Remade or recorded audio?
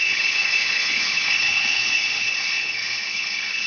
remade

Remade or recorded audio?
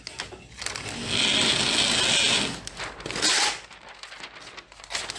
recorded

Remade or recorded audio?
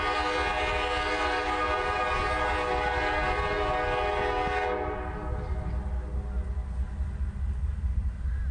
recorded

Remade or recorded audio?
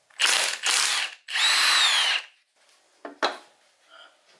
recorded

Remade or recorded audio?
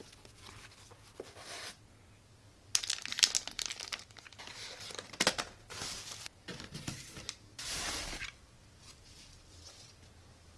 recorded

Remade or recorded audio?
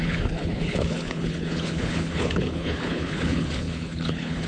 remade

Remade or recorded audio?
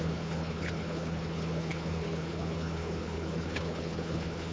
remade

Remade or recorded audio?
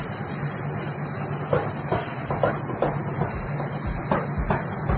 recorded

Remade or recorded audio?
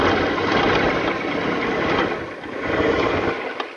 recorded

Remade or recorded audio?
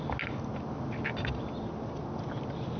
recorded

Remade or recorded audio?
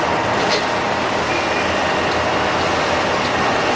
recorded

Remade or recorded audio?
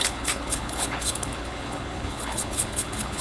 remade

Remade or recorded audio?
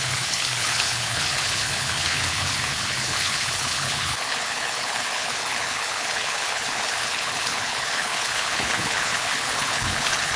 remade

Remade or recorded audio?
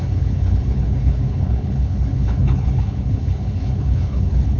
remade